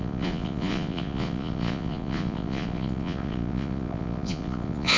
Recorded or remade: remade